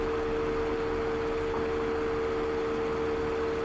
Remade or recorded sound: recorded